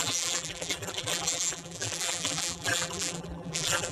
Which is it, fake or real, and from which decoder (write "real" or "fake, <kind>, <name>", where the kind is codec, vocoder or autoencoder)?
fake, vocoder, BigVGAN v2